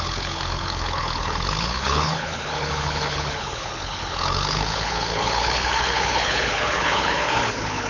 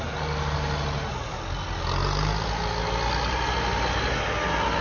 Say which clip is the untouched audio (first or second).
second